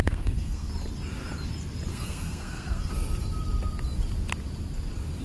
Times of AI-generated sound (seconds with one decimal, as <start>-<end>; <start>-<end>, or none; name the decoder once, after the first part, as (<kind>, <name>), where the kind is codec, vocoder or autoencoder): 0.0-0.7 (codec, SNAC); 1.9-2.9